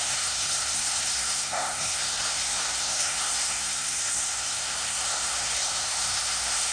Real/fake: fake